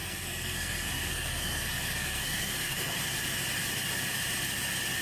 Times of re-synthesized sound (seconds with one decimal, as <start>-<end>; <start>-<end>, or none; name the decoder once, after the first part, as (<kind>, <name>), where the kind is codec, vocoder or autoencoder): 0.0-3.0 (codec, SNAC)